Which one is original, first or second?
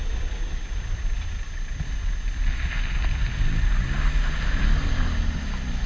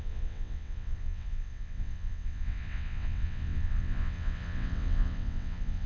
first